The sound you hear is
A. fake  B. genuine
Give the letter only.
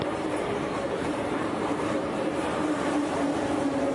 A